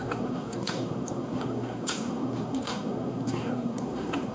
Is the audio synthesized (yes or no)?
yes